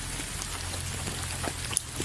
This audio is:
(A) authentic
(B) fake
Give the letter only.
A